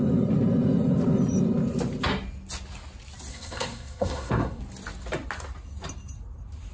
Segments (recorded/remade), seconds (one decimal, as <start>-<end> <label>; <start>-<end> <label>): 0.0-3.3 recorded; 3.3-4.6 remade; 4.6-6.7 recorded